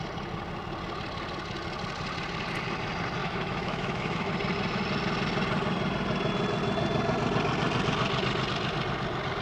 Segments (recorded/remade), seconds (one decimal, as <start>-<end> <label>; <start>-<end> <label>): 0.0-3.2 recorded; 3.2-4.3 remade; 4.3-9.4 recorded

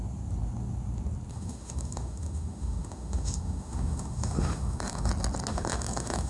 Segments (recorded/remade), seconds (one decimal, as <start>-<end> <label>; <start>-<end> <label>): 0.0-1.3 recorded; 1.3-5.1 remade; 5.1-5.5 recorded; 5.5-6.3 remade

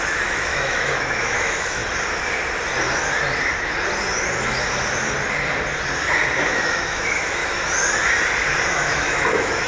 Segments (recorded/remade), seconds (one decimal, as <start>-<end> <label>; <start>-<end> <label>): 0.0-1.8 remade; 1.8-6.6 recorded; 6.6-7.4 remade; 7.4-8.7 recorded; 8.7-9.7 remade

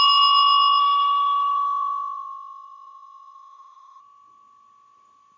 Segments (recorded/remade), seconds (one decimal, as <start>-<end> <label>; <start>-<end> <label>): 0.0-0.8 recorded; 0.8-4.0 remade; 4.0-5.4 recorded

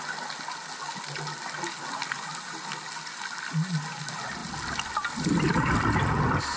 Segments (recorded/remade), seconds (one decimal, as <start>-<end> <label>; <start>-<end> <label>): 0.0-6.6 recorded

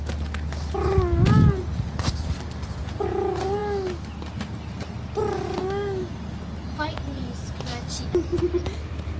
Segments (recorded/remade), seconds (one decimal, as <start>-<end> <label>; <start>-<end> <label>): 0.0-5.6 recorded; 5.6-6.1 remade; 6.1-9.2 recorded

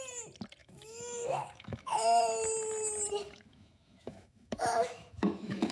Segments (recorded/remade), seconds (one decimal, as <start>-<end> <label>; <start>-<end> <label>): 0.0-0.6 recorded; 0.6-2.2 remade; 2.2-3.2 recorded; 3.2-5.7 remade